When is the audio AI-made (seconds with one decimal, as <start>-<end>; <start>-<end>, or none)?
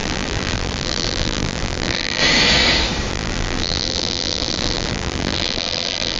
0.0-2.2; 3.1-6.2